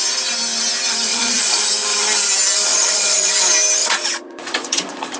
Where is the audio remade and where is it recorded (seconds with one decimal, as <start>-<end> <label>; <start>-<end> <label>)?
0.0-1.1 recorded; 1.1-1.6 remade; 1.6-2.7 recorded; 2.7-3.3 remade; 3.3-3.8 recorded; 3.8-5.2 remade

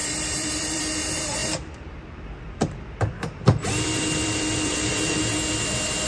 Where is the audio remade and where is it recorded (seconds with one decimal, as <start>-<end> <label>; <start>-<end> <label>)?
0.0-0.8 remade; 0.8-1.4 recorded; 1.4-5.1 remade; 5.1-6.1 recorded

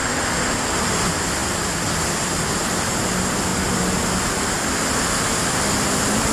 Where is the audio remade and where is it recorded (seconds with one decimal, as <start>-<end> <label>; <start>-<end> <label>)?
0.0-6.3 recorded

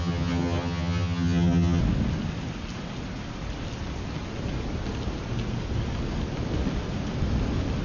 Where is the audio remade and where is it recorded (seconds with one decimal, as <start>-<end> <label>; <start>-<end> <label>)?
0.0-1.8 remade; 1.8-7.8 recorded

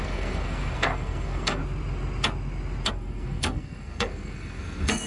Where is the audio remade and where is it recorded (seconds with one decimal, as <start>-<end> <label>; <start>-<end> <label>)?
0.0-1.6 remade; 1.6-2.9 recorded; 2.9-5.1 remade

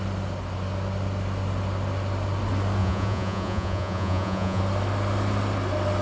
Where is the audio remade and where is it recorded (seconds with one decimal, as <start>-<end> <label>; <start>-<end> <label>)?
0.0-2.8 recorded; 2.8-4.6 remade; 4.6-6.0 recorded

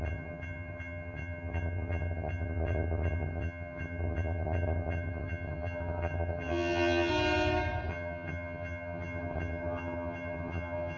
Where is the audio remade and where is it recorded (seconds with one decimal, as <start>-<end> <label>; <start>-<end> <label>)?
0.0-7.1 remade; 7.1-7.9 recorded; 7.9-11.0 remade